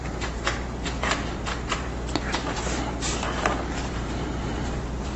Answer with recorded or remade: remade